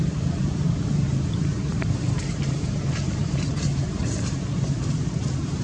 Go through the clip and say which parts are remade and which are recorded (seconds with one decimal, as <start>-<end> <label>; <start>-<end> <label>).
0.0-5.6 remade